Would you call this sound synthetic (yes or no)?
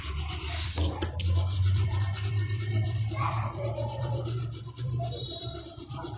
yes